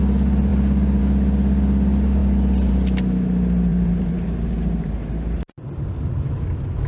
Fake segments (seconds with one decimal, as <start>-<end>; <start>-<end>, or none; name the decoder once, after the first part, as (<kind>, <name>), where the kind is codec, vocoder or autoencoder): 3.7-5.4 (vocoder, BigVGAN v2)